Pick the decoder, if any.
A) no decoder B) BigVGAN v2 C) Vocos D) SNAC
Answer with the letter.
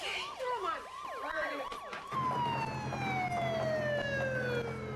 A